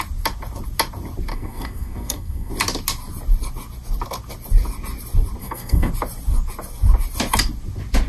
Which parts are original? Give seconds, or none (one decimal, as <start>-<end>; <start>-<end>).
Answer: 0.0-1.3; 2.5-5.4; 5.9-8.1